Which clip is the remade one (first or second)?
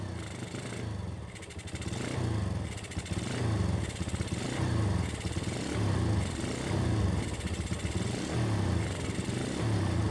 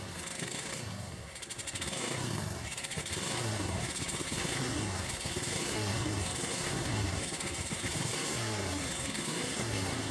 second